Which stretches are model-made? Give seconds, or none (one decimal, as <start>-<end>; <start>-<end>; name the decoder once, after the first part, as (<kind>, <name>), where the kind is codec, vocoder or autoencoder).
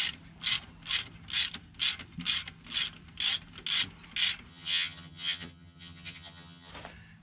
4.5-6.7 (vocoder, HiFi-GAN)